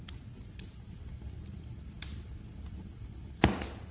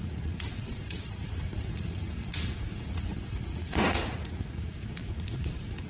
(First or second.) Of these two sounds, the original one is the first